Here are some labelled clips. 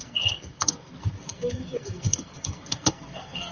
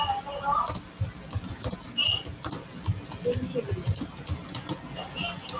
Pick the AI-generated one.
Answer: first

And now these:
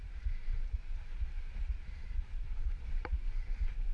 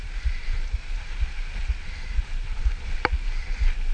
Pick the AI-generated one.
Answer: first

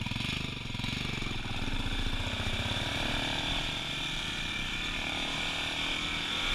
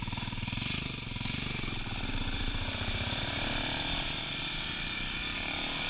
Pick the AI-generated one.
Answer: second